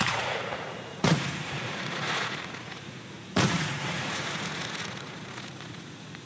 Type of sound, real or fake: fake